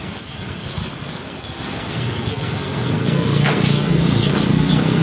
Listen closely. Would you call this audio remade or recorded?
remade